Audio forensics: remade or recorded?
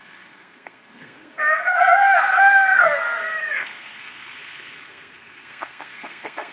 remade